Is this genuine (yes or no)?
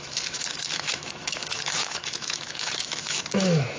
no